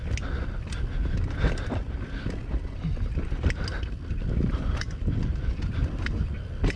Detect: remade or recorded recorded